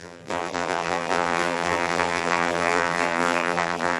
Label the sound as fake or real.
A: fake